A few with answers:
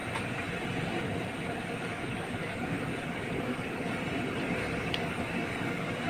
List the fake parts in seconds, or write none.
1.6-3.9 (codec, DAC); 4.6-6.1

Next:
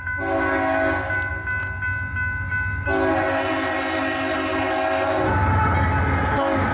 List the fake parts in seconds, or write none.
none

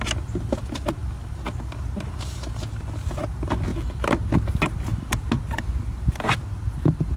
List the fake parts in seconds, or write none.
none

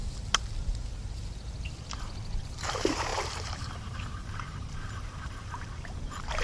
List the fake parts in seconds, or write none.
2.4-6.4 (vocoder, BigVGAN v2)

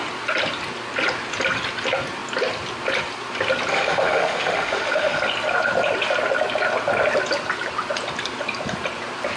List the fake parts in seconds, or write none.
3.7-5.2 (autoencoder, DAC-VAE)

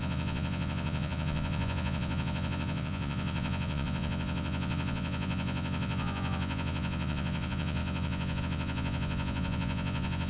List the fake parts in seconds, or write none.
0.0-10.3 (vocoder, Vocos)

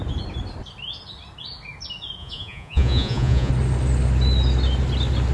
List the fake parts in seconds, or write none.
2.2-3.5 (vocoder, Vocos)